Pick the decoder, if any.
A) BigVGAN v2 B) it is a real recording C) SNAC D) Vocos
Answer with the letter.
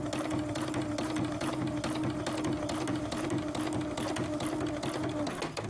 B